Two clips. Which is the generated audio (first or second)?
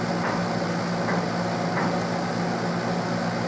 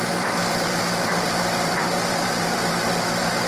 second